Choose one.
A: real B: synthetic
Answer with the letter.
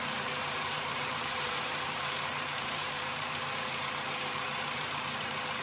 B